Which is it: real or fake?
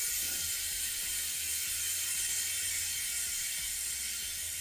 real